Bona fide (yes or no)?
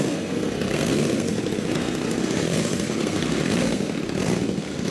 no